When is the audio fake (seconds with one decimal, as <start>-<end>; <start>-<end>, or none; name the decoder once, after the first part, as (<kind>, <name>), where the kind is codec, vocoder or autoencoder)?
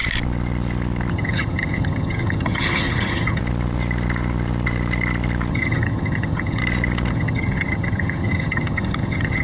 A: 1.1-3.4 (vocoder, HiFi-GAN); 5.5-6.6; 7.1-9.4